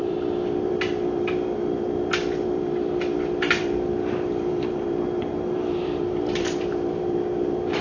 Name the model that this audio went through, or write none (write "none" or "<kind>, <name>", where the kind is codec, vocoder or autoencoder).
vocoder, BigVGAN v2